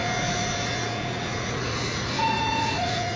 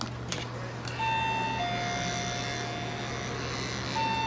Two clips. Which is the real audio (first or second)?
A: second